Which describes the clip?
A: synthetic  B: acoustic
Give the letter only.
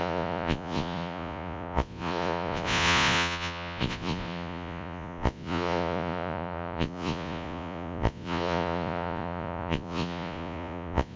A